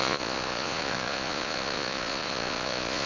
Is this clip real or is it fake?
fake